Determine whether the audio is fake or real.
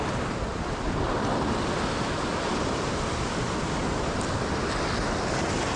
real